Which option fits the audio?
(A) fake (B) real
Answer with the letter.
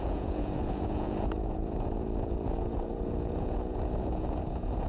A